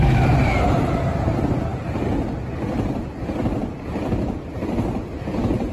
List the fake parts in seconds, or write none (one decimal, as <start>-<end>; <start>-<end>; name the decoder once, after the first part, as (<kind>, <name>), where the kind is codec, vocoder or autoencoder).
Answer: none

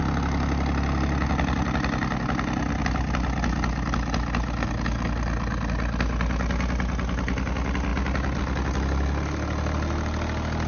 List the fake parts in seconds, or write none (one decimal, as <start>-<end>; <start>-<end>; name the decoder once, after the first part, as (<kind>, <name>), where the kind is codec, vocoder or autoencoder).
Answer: none

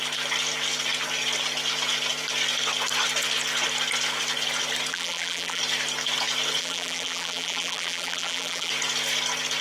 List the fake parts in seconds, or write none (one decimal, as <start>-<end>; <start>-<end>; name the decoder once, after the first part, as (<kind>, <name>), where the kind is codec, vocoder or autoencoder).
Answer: 4.9-5.6 (vocoder, BigVGAN v2); 6.6-8.7